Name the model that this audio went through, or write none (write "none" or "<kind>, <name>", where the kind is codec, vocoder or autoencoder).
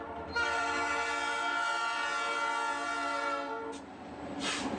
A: vocoder, BigVGAN v2